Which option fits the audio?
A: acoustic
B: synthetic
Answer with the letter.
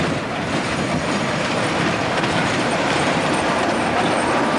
B